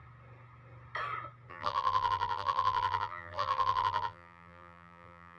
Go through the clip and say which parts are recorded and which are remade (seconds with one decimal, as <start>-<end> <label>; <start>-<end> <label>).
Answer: 0.0-1.5 recorded; 1.5-5.4 remade